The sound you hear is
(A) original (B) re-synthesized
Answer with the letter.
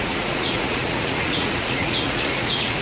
B